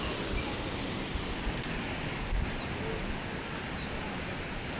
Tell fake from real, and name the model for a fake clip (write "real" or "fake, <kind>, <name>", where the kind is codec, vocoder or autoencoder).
real